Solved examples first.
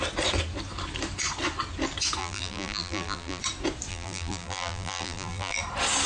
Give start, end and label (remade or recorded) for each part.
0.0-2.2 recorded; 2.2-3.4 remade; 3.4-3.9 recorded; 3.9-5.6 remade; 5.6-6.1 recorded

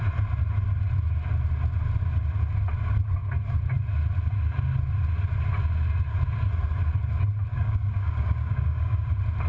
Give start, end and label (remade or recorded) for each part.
0.0-7.5 recorded; 7.5-9.1 remade; 9.1-9.5 recorded

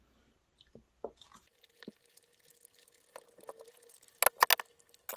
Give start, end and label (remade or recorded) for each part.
0.0-5.2 recorded